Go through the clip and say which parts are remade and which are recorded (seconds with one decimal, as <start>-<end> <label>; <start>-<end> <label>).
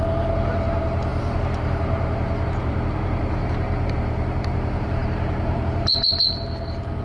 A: 0.0-7.0 remade